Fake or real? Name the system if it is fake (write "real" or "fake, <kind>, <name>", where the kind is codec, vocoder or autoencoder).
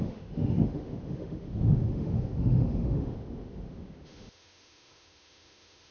fake, autoencoder, DAC-VAE